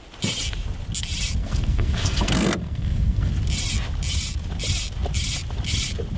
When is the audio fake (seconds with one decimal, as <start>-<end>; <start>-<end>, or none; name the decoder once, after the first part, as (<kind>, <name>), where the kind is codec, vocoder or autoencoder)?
1.4-3.3 (codec, SNAC)